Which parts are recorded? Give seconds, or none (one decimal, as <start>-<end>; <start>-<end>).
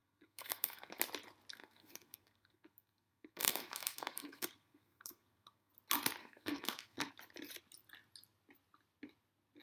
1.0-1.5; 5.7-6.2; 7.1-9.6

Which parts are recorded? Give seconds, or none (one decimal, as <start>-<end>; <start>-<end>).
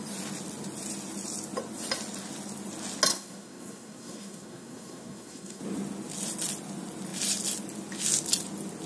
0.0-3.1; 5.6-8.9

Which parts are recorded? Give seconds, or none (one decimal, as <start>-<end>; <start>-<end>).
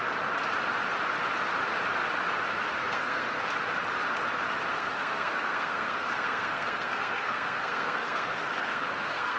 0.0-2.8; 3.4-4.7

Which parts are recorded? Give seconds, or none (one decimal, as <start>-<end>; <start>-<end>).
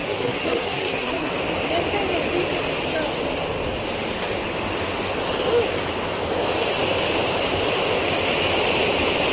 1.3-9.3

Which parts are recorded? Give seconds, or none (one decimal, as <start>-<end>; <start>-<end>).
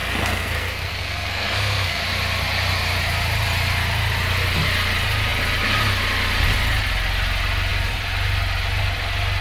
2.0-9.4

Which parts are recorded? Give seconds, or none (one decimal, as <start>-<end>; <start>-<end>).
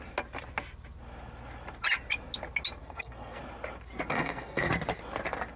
0.0-2.8; 3.4-4.1; 4.7-5.6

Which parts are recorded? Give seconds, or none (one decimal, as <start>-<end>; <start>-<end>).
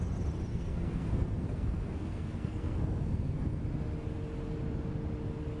0.0-0.5; 3.6-5.6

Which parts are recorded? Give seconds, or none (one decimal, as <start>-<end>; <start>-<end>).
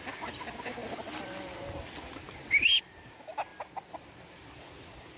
0.0-5.2